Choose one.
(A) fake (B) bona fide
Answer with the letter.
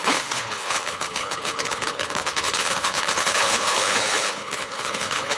A